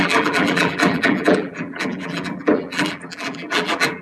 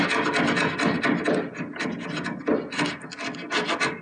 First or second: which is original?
second